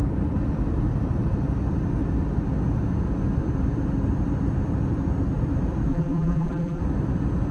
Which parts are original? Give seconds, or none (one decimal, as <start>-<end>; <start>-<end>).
0.0-5.9; 6.8-7.5

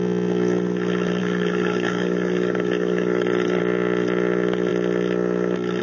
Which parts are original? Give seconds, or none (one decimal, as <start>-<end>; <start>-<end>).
0.0-1.2; 3.6-5.8

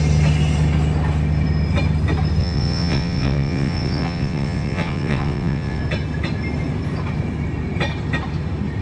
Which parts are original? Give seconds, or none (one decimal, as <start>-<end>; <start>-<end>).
0.0-2.4; 5.8-8.8

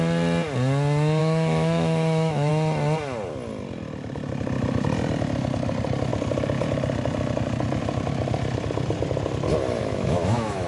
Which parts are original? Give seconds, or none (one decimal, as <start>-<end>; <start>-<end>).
0.0-1.2; 2.5-9.8